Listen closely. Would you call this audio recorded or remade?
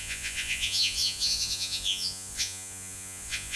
remade